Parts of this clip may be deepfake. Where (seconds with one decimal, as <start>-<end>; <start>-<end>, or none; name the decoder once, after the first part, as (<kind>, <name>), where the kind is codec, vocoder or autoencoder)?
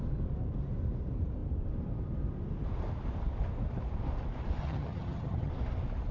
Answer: 4.6-5.5 (vocoder, HiFi-GAN)